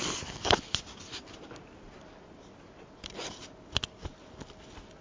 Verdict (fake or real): real